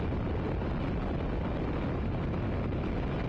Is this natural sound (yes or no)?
yes